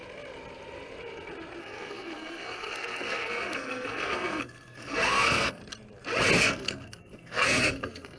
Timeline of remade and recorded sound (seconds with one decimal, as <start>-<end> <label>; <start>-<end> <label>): 0.0-1.6 recorded; 1.6-5.6 remade; 5.6-6.4 recorded; 6.4-8.2 remade

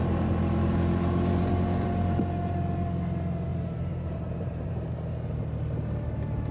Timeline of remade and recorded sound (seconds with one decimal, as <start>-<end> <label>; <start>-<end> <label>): 0.0-3.5 recorded; 3.5-4.7 remade; 4.7-6.5 recorded

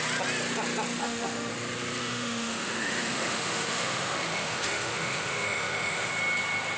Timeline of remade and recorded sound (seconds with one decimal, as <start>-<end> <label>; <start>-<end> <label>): 0.0-1.0 recorded; 1.0-1.5 remade; 1.5-2.0 recorded; 2.0-6.1 remade; 6.1-6.8 recorded